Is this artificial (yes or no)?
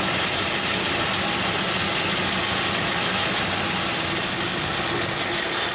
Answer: no